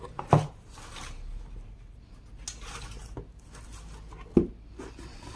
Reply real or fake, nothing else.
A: real